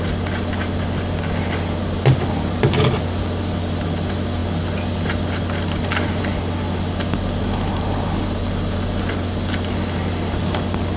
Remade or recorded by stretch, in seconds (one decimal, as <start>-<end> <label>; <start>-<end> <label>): 0.0-11.0 remade